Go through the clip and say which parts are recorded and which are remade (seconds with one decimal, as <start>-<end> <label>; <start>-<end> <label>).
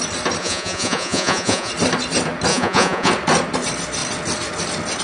0.0-0.4 recorded; 0.4-1.7 remade; 1.7-2.5 recorded; 2.5-3.1 remade; 3.1-5.0 recorded